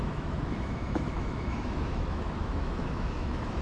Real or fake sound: fake